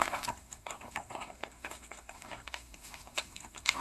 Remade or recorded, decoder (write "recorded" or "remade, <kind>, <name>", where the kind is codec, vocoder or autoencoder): remade, codec, SNAC